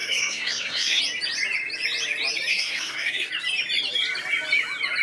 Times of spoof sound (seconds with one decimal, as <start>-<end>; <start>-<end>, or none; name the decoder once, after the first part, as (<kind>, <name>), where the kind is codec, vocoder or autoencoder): 0.0-1.0 (codec, SNAC); 2.5-3.3